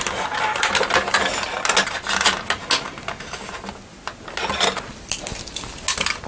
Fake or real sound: real